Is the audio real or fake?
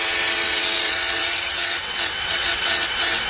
fake